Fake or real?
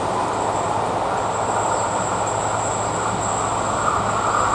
real